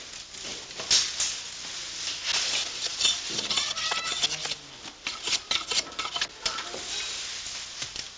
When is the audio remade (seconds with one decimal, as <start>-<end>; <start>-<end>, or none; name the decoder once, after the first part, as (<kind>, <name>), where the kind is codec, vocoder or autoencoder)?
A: none